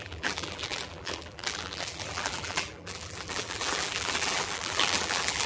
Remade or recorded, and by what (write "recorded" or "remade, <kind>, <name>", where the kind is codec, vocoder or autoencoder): remade, vocoder, BigVGAN v2